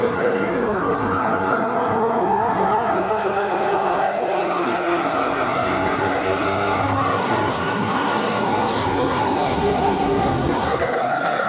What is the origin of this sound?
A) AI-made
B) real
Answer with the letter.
A